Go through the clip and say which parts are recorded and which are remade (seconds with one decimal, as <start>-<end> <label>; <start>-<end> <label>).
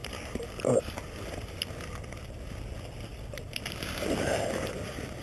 0.0-1.7 remade; 1.7-5.2 recorded